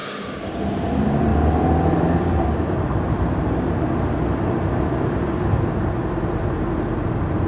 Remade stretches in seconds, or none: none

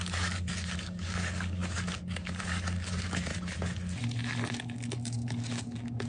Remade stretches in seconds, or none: 0.0-3.3 (codec, DAC); 4.5-6.1

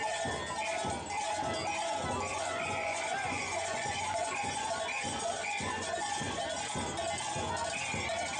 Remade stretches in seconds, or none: 2.3-6.4 (vocoder, Vocos)

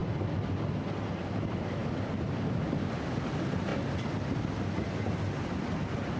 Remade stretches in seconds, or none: none